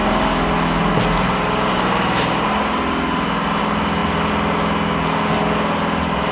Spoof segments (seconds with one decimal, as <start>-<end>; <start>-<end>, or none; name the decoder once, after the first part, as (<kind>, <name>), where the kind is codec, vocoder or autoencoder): none